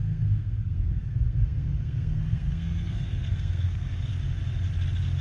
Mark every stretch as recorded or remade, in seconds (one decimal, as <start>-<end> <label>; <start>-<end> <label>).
0.0-4.1 remade; 4.1-5.2 recorded